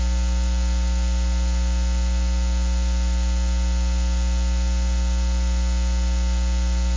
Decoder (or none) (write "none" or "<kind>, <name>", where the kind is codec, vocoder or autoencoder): none